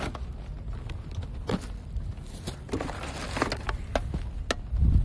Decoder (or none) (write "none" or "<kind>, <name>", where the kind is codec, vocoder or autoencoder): none